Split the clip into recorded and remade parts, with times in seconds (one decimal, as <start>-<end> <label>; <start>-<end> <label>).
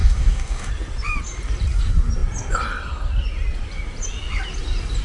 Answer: 0.0-0.7 remade; 0.7-5.0 recorded